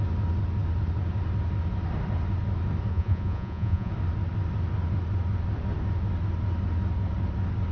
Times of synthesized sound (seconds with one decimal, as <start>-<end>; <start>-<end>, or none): 2.9-3.9

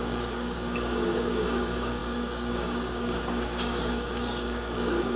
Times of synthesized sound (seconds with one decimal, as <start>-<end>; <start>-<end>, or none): 0.0-5.2

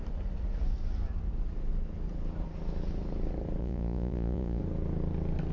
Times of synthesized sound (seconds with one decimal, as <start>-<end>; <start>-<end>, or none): 3.6-4.6

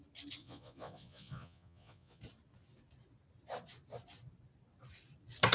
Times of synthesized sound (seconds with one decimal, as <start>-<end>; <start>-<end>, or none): 0.4-2.2

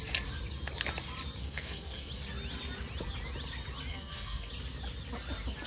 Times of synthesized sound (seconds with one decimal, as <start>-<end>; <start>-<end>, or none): 1.4-2.1; 3.9-4.5

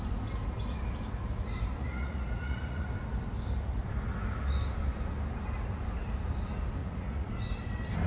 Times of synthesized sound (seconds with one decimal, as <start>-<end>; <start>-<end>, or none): 1.8-2.9; 6.8-7.3

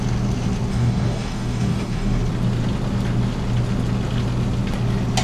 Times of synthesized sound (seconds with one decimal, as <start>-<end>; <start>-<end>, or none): 0.7-2.2